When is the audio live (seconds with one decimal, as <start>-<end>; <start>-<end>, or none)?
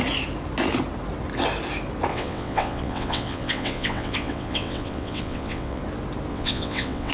0.0-2.1; 5.8-6.3